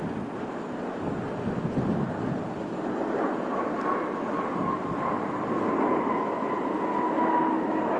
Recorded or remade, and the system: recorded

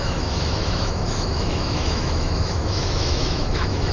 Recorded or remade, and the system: remade, autoencoder, DAC-VAE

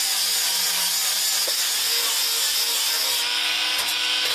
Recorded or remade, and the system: recorded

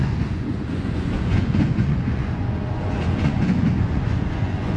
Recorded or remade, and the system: remade, vocoder, Vocos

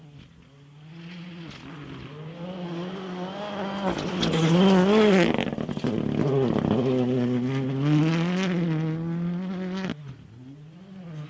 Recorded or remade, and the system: recorded